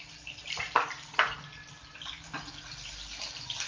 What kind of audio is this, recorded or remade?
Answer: recorded